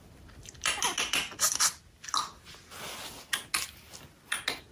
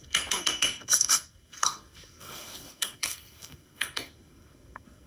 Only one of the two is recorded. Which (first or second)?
first